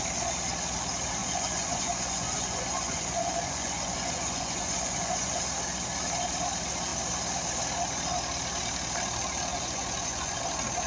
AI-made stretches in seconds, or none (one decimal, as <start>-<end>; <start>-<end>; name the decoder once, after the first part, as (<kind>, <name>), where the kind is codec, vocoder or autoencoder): 1.2-5.4 (vocoder, Vocos); 9.5-10.4